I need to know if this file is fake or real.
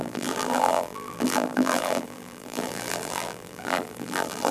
fake